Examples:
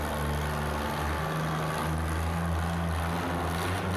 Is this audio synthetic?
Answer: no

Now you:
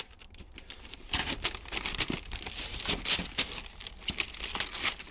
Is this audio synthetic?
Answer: no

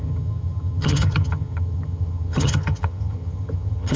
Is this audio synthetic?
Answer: yes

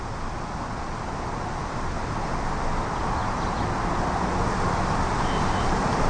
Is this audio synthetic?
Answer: no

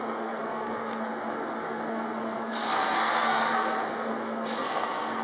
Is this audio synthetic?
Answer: yes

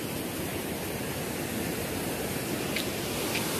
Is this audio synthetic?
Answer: no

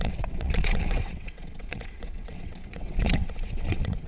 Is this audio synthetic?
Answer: yes